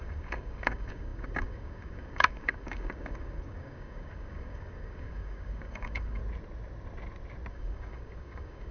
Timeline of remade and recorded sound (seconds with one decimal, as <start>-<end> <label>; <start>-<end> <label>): 0.0-6.2 remade; 6.2-7.5 recorded; 7.5-8.7 remade